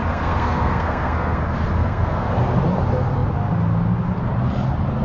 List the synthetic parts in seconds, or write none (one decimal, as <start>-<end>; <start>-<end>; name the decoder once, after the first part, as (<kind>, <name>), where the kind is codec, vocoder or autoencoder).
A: 0.0-1.4 (codec, SNAC); 1.8-2.3